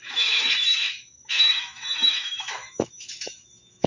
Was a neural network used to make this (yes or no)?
yes